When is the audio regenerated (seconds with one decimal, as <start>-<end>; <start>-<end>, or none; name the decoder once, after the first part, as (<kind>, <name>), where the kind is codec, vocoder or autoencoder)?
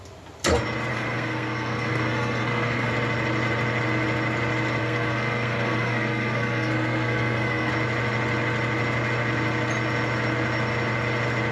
0.9-2.9 (codec, SNAC); 4.8-7.7